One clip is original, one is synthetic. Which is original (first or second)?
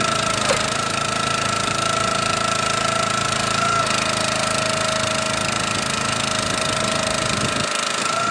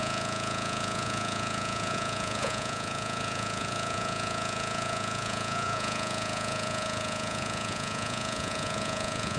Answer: first